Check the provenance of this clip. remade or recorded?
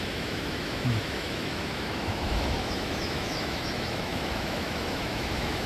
remade